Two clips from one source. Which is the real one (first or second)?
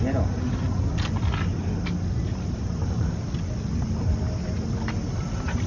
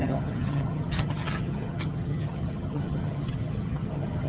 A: first